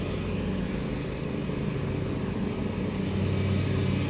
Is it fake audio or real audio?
real